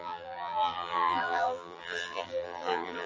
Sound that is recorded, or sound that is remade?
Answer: remade